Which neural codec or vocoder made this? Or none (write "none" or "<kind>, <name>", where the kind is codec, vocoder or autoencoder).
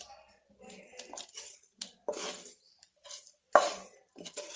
vocoder, BigVGAN v2